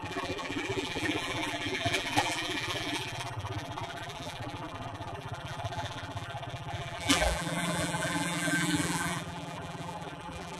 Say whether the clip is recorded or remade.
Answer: remade